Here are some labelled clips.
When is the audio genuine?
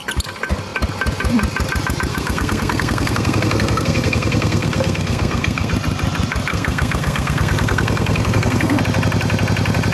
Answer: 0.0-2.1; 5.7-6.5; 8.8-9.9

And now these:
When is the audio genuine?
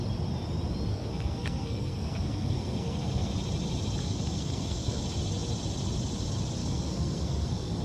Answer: 0.0-0.9; 3.3-4.0; 5.0-6.6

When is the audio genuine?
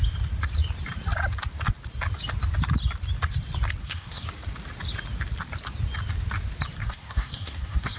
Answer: 0.0-3.8; 4.3-6.8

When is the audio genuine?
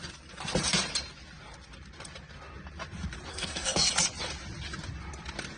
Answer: 0.0-3.3; 3.9-5.6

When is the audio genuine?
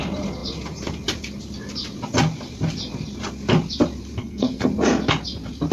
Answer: 0.0-4.2; 4.7-5.7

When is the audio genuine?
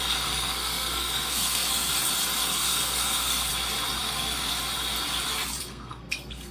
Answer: 1.9-2.4; 3.5-4.0; 4.5-5.6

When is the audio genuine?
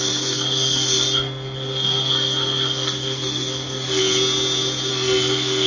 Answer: 4.0-4.9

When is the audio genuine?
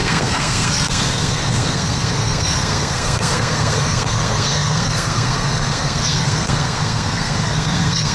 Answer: none